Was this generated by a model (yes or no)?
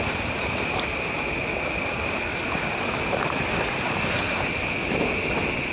no